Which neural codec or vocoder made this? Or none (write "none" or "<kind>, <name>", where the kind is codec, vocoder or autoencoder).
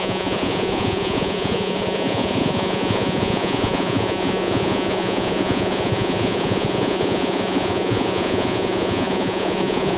vocoder, Vocos